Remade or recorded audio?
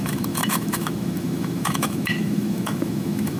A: remade